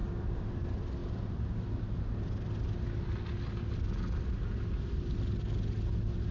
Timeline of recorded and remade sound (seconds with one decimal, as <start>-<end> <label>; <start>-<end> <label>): 0.0-6.3 recorded